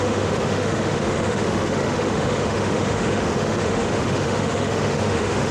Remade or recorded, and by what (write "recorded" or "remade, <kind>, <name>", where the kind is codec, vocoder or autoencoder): remade, autoencoder, DAC-VAE